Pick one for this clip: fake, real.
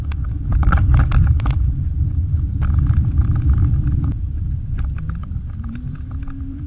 fake